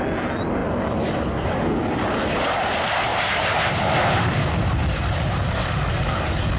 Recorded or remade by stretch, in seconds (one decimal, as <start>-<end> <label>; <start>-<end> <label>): 0.0-3.1 recorded; 3.1-5.9 remade; 5.9-6.6 recorded